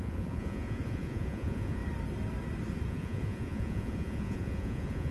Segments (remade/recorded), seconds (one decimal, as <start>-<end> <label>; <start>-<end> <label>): 0.0-1.8 remade; 1.8-2.9 recorded; 2.9-5.1 remade